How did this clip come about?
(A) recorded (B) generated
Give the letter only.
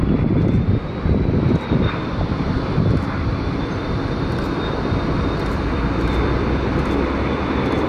B